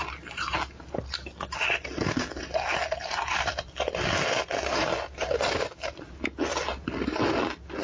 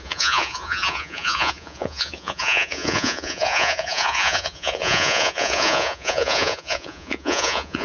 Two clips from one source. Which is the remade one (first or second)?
second